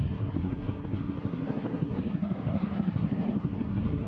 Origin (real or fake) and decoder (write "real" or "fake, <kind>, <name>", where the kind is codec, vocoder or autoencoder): fake, codec, SNAC